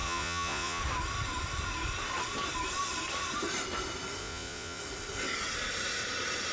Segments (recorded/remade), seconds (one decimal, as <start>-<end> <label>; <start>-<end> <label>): 0.0-0.8 remade; 0.8-4.2 recorded; 4.2-4.8 remade; 4.8-6.5 recorded